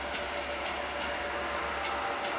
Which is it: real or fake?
real